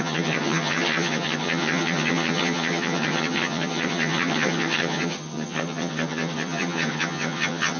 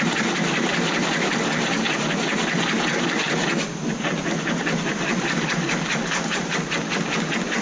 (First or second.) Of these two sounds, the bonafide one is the second